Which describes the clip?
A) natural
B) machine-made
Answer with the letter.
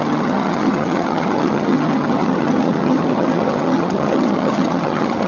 B